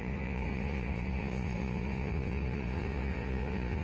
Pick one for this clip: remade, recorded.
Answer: remade